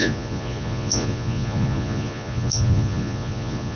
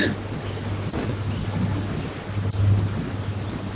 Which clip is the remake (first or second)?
first